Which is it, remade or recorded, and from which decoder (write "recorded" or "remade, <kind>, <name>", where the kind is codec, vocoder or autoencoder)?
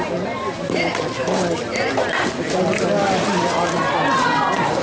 recorded